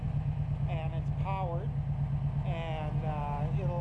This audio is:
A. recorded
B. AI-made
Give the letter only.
A